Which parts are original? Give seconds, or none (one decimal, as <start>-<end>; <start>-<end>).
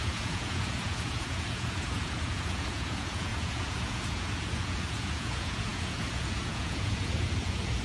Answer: none